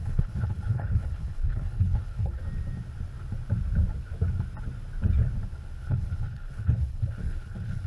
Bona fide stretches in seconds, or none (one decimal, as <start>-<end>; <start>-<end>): 2.4-5.8